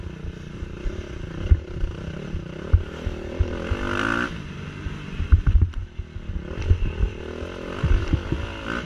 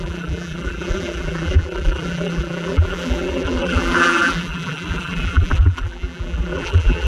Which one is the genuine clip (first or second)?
first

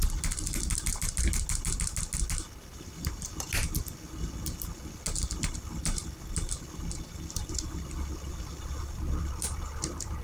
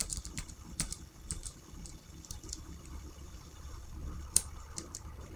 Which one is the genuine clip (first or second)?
first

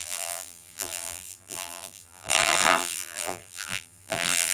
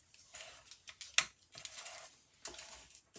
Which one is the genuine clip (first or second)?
second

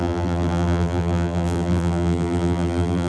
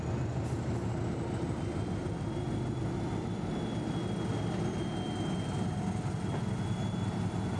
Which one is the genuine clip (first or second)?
second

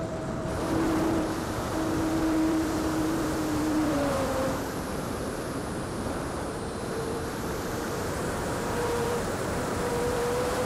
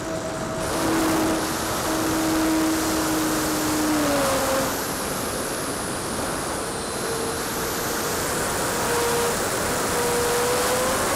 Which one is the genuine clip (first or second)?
second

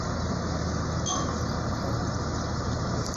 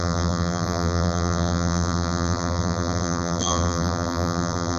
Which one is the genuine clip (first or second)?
first